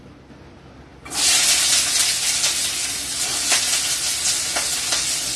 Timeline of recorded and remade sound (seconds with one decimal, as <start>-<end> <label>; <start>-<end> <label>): 0.0-5.4 recorded